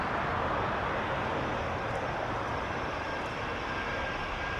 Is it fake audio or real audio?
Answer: real